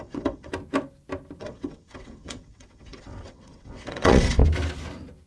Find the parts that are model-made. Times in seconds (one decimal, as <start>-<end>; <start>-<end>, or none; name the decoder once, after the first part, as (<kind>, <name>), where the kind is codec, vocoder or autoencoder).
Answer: 0.0-0.5 (vocoder, WaveNeXt); 1.4-4.4